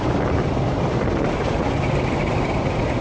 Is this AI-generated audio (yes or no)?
no